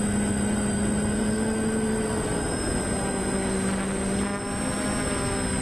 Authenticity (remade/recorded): recorded